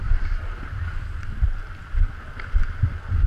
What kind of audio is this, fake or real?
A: real